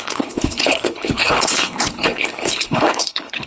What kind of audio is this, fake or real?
fake